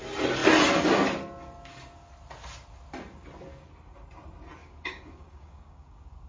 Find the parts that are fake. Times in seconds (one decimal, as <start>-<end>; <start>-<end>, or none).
4.6-6.3